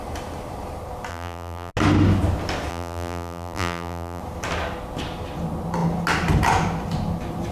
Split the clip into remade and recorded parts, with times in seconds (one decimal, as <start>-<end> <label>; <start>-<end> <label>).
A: 0.0-1.1 recorded; 1.1-1.7 remade; 1.7-2.7 recorded; 2.7-4.2 remade; 4.2-7.5 recorded